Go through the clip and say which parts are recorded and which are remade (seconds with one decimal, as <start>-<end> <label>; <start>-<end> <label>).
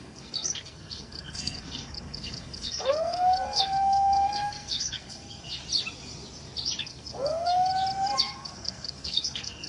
0.0-5.6 remade; 5.6-6.8 recorded; 6.8-7.7 remade; 7.7-8.2 recorded; 8.2-9.7 remade